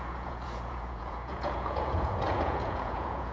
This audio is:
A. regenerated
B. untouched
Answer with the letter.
A